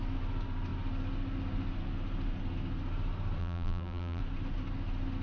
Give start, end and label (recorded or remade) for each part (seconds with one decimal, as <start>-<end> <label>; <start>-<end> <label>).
0.0-3.4 recorded; 3.4-4.2 remade; 4.2-5.2 recorded